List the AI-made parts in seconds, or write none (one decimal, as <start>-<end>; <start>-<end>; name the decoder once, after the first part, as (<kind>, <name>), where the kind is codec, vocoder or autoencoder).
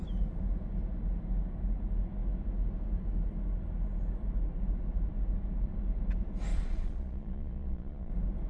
6.5-8.1 (vocoder, Vocos)